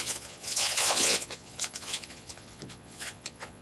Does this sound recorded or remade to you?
remade